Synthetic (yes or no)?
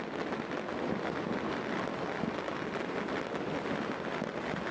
no